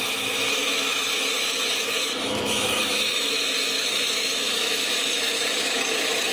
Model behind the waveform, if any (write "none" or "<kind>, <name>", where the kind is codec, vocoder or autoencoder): autoencoder, DAC-VAE